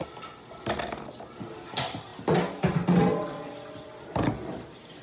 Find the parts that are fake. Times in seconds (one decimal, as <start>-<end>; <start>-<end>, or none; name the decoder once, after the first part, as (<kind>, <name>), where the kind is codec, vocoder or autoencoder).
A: none